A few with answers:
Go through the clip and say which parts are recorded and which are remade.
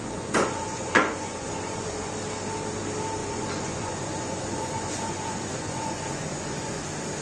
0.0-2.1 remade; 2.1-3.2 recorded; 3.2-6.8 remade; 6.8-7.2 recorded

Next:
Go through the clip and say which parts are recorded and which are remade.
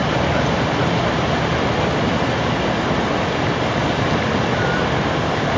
0.0-5.6 recorded